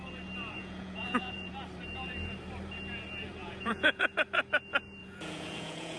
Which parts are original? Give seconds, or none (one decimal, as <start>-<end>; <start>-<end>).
0.0-0.6; 1.5-3.4; 4.0-5.0